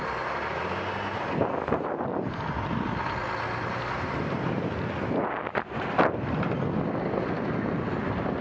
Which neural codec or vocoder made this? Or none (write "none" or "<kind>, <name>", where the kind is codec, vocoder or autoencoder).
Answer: none